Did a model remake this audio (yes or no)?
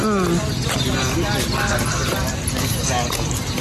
no